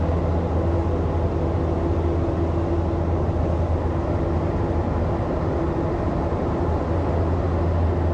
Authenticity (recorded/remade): recorded